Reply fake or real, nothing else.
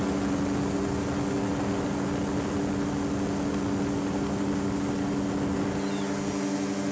real